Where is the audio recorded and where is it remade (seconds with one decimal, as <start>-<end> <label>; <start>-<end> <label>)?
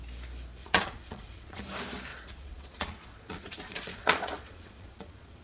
0.0-0.6 recorded; 0.6-1.6 remade; 1.6-2.1 recorded; 2.1-5.4 remade